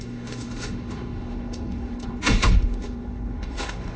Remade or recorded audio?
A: remade